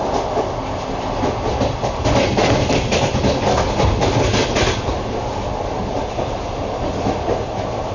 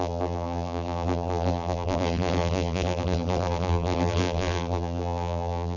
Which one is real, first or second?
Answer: first